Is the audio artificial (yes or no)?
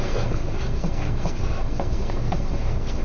yes